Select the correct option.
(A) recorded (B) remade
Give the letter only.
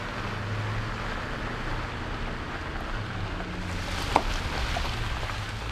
A